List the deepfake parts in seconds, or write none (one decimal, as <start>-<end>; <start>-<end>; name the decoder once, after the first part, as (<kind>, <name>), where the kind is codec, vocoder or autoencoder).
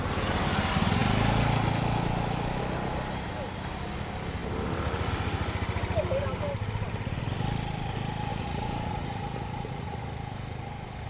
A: 8.3-10.0 (vocoder, Vocos)